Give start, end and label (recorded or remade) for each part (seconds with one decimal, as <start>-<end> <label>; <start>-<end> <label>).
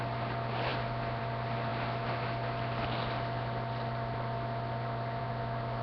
0.0-5.8 recorded